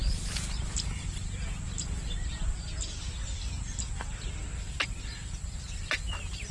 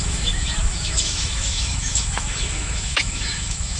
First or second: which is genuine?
first